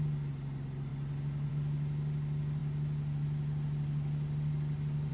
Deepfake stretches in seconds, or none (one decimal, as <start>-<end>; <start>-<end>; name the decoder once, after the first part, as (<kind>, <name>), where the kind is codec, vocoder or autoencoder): none